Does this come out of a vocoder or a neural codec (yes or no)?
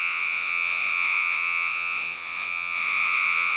yes